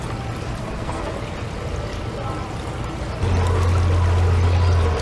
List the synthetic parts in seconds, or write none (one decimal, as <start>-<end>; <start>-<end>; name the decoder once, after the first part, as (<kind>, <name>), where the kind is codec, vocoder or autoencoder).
0.6-1.1 (codec, SNAC)